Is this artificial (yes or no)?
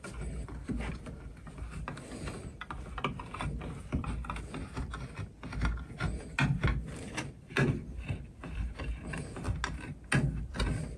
no